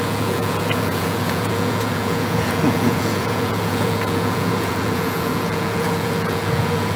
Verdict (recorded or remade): remade